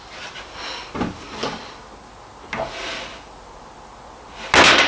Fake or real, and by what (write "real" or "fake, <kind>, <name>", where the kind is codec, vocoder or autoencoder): real